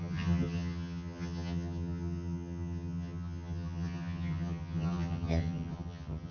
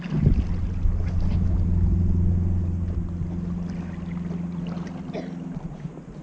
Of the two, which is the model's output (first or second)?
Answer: first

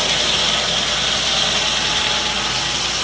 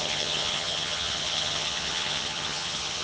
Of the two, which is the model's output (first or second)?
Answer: second